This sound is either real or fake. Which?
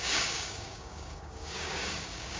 fake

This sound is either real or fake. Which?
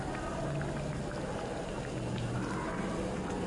real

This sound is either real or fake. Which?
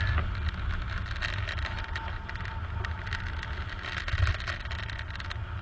real